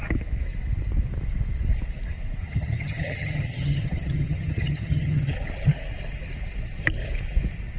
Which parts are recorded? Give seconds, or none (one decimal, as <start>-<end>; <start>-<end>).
0.0-2.4; 5.3-7.8